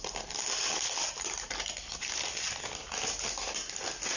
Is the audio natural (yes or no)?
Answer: yes